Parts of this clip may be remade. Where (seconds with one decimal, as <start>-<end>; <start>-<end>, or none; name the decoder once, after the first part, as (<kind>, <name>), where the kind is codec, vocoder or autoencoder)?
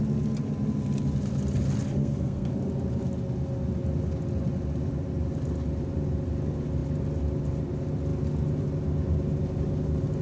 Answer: 2.0-2.5 (codec, SNAC)